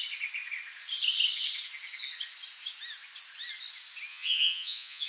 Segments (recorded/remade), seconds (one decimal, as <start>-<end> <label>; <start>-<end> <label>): 0.0-4.1 recorded; 4.1-5.1 remade